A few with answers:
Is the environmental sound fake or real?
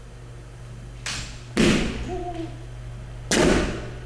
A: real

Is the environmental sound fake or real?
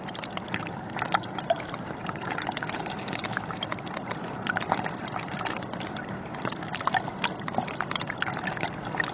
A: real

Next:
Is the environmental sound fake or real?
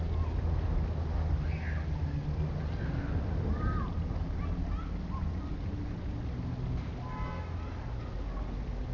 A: real